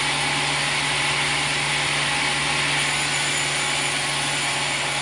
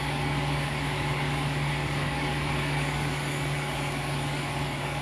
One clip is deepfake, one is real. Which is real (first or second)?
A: first